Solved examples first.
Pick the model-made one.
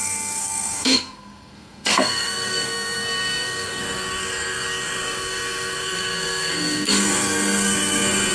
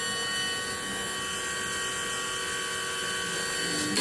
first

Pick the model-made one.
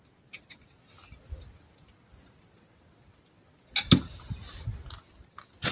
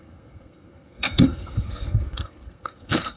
second